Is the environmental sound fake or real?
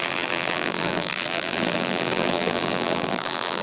fake